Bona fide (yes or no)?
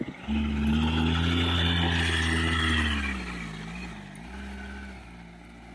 yes